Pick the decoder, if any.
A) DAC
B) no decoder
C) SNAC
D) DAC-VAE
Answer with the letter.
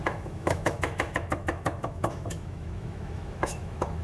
D